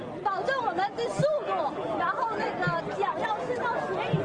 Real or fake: real